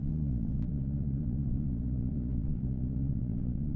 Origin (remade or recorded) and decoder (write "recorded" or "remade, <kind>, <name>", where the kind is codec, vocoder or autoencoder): remade, vocoder, Vocos